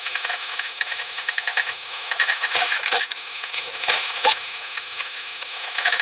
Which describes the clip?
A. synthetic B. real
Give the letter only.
A